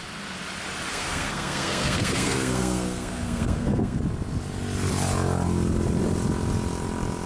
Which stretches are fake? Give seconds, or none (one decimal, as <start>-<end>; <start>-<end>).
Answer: 0.9-4.0